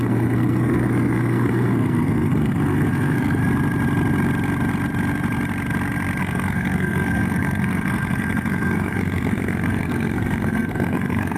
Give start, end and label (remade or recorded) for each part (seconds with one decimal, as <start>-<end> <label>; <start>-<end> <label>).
0.0-3.4 remade; 3.4-6.2 recorded; 6.2-11.4 remade